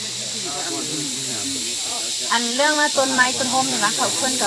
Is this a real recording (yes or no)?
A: no